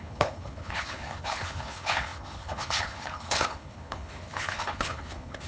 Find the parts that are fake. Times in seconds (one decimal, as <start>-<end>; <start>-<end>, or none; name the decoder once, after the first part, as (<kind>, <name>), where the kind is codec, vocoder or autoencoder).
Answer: 0.0-5.5 (codec, HILCodec)